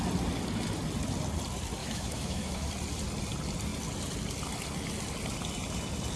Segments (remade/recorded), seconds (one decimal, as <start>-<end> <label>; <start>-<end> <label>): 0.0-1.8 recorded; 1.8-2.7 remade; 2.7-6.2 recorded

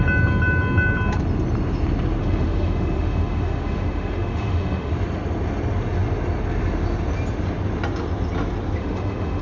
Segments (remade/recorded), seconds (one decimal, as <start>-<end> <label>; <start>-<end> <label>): 0.0-2.2 recorded; 2.2-4.9 remade; 4.9-8.8 recorded; 8.8-9.4 remade

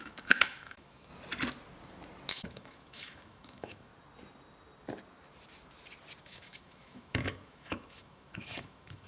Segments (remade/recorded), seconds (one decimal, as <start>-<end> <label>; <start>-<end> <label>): 0.0-1.1 remade; 1.1-2.3 recorded; 2.3-3.9 remade; 3.9-6.2 recorded; 6.2-9.1 remade

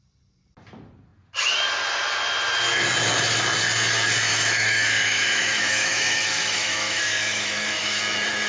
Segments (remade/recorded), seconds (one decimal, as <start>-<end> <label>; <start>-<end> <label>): 0.0-4.3 recorded; 4.3-8.0 remade; 8.0-8.5 recorded

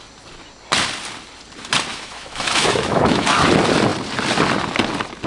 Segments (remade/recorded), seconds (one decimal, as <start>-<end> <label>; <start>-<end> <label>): 0.0-1.9 recorded; 1.9-3.5 remade; 3.5-5.3 recorded